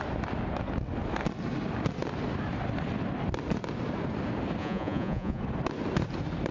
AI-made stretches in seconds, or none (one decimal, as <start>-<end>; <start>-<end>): 4.6-5.4